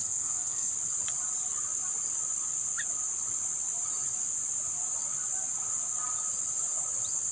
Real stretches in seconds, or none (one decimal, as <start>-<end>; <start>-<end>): 0.7-7.3